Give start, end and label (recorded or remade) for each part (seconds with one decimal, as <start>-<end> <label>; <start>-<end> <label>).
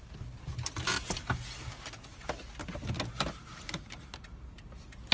0.0-5.1 recorded